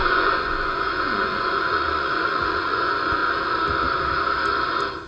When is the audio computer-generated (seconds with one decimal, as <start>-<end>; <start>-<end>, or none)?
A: 0.0-3.2